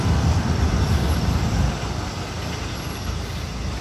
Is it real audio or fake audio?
fake